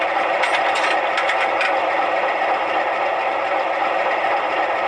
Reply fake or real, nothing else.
fake